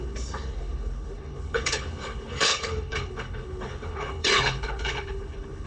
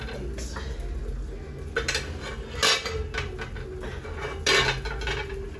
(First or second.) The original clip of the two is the second